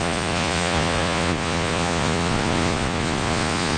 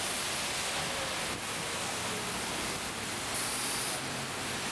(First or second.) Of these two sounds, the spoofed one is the first